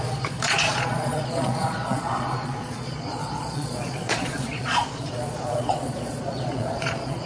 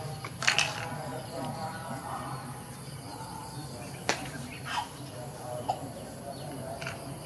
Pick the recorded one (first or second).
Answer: second